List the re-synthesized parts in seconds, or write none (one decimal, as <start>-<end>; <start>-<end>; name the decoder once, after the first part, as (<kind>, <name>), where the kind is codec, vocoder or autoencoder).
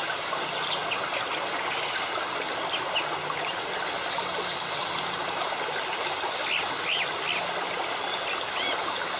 none